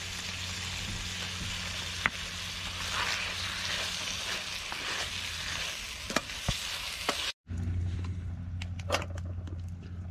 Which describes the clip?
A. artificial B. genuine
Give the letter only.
B